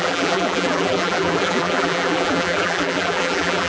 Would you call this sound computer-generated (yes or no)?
yes